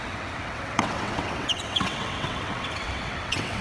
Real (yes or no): no